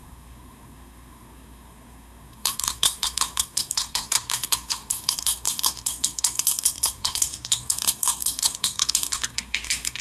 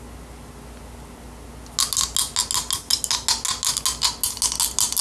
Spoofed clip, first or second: first